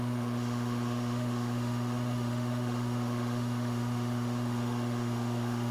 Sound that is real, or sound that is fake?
fake